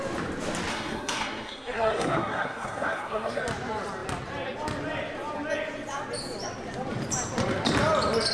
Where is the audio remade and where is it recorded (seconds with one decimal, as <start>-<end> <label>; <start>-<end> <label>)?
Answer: 0.0-0.7 recorded; 0.7-3.4 remade; 3.4-8.3 recorded